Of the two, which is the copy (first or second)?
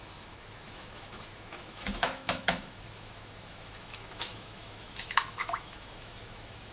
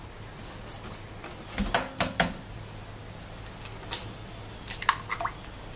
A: first